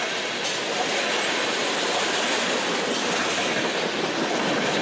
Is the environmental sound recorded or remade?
recorded